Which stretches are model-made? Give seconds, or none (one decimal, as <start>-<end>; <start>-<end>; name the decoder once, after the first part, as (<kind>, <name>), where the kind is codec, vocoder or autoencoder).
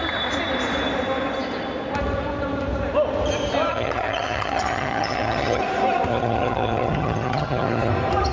3.7-5.6 (vocoder, HiFi-GAN); 6.1-7.9